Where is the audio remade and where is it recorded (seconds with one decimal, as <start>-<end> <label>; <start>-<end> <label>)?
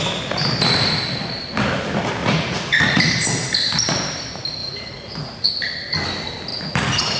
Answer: 0.0-2.2 recorded; 2.2-3.1 remade; 3.1-4.6 recorded; 4.6-5.5 remade; 5.5-6.5 recorded; 6.5-7.2 remade